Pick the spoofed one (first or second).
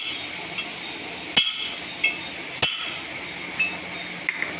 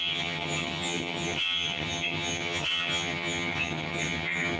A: second